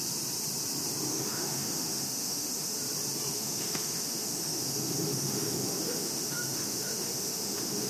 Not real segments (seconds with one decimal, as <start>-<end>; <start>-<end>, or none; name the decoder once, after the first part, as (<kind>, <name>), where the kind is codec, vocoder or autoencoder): 1.1-2.8 (autoencoder, DAC-VAE); 3.3-7.9